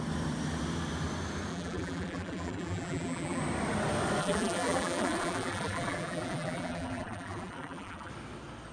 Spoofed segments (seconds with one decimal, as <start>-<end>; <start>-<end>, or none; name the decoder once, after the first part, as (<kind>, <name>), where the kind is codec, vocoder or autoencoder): 1.5-3.4 (vocoder, BigVGAN v2); 4.2-8.1